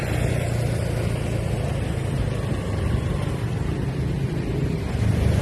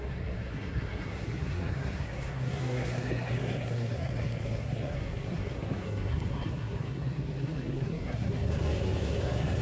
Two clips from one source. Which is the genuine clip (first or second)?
first